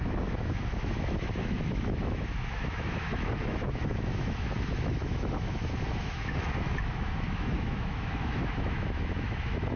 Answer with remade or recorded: remade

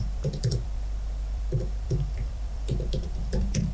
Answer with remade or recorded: remade